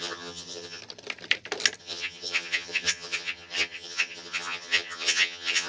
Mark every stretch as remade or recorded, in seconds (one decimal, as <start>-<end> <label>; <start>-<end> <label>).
0.0-0.8 remade; 0.8-1.8 recorded; 1.8-5.7 remade